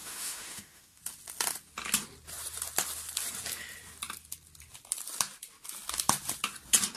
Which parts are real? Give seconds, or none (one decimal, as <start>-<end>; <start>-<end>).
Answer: 1.0-7.0